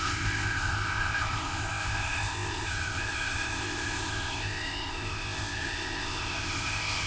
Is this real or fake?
fake